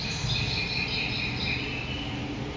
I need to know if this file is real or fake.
real